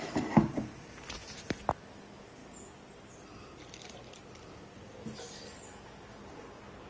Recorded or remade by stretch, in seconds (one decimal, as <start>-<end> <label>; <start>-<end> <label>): 0.0-6.9 recorded